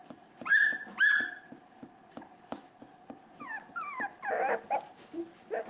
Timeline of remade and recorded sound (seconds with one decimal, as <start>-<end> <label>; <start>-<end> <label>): 0.0-5.7 recorded